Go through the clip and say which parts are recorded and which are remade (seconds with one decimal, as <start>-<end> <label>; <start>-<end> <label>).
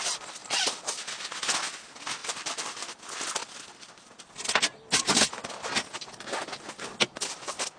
0.0-0.4 recorded; 0.4-0.9 remade; 0.9-2.2 recorded; 2.2-3.0 remade; 3.0-7.8 recorded